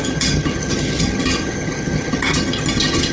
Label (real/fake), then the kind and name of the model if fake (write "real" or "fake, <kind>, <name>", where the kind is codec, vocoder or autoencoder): fake, vocoder, HiFi-GAN